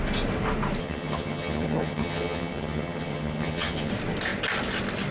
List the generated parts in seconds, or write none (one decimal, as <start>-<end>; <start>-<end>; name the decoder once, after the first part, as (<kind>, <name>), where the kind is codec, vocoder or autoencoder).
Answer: 0.8-3.9 (vocoder, HiFi-GAN)